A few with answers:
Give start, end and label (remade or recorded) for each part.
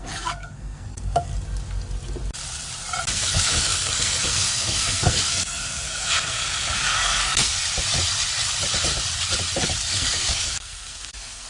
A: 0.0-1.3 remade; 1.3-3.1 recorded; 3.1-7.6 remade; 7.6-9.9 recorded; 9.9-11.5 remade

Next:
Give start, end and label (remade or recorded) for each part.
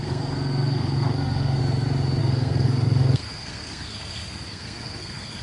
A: 0.0-1.6 remade; 1.6-2.2 recorded; 2.2-5.4 remade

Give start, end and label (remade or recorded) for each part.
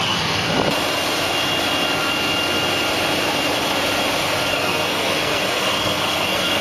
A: 0.0-0.5 remade; 0.5-4.5 recorded; 4.5-6.6 remade